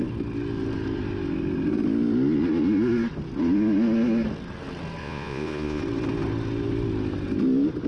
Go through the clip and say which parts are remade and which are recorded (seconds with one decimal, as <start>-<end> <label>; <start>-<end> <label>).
0.0-5.0 recorded; 5.0-5.8 remade; 5.8-7.9 recorded